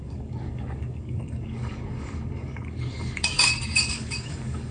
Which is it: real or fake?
fake